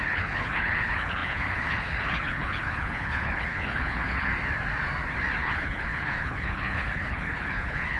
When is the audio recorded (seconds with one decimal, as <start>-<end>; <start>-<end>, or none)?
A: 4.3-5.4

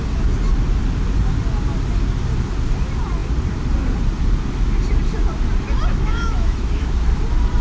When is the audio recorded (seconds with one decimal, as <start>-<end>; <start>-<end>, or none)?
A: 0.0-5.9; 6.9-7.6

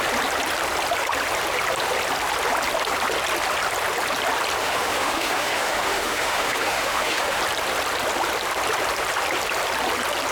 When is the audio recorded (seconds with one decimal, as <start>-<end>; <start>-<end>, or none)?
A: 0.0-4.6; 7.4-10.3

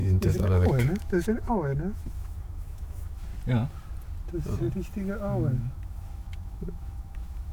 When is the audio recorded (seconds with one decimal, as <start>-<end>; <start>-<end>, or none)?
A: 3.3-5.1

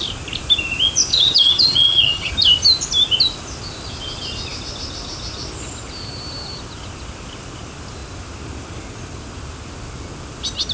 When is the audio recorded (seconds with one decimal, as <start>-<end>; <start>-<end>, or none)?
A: 0.0-1.1; 2.3-10.7

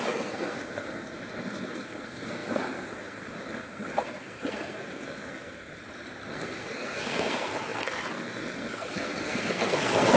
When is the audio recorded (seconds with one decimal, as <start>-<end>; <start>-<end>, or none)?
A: 5.8-6.3

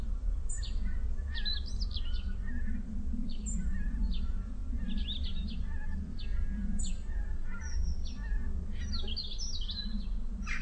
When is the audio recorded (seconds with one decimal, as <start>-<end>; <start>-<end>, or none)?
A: 0.0-10.6